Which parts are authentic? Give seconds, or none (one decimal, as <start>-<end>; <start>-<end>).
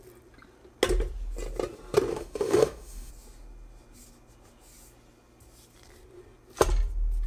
0.0-2.1; 3.1-7.3